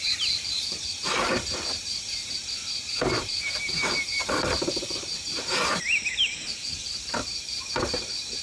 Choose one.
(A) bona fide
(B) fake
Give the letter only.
B